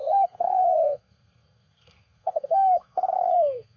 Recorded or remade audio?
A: remade